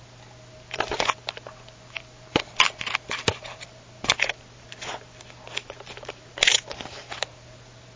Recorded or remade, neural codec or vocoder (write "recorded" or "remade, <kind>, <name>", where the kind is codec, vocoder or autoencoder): recorded